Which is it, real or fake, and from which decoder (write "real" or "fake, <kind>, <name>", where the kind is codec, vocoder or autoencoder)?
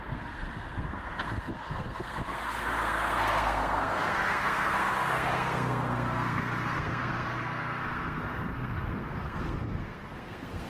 fake, codec, SNAC